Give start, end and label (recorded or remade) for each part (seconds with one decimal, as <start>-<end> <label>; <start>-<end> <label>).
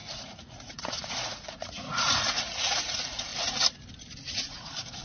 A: 0.0-3.3 remade; 3.3-4.2 recorded; 4.2-5.0 remade